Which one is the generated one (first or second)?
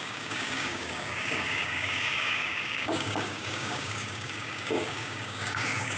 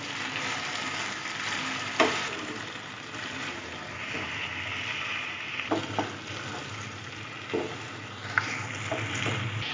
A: first